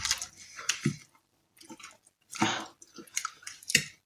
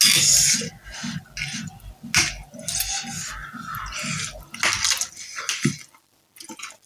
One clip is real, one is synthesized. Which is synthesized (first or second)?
first